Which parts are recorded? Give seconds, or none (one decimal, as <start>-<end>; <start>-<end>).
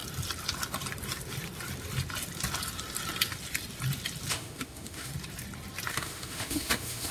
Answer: 0.0-4.3; 5.1-5.9